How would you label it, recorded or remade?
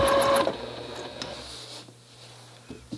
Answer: recorded